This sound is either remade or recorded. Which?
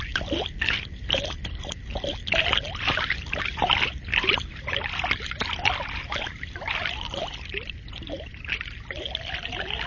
recorded